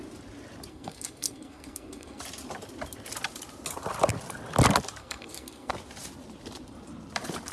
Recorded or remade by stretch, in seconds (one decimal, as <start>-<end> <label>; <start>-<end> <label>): 0.0-0.7 recorded; 0.7-2.2 remade; 2.2-5.0 recorded; 5.0-5.7 remade; 5.7-7.5 recorded